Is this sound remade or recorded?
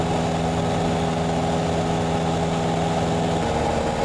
recorded